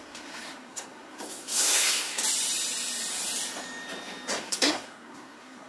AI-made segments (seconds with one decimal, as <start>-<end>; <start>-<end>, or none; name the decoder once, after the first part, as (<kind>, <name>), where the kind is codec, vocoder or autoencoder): 0.0-2.2 (codec, SNAC); 4.4-5.7